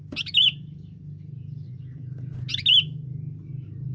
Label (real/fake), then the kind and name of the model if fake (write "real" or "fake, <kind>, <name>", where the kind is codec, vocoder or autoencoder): real